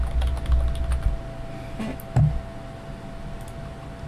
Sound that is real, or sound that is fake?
real